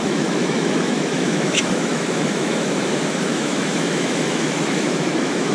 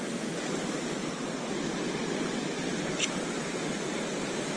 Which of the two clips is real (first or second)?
second